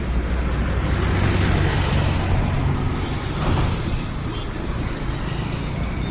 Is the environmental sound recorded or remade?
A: recorded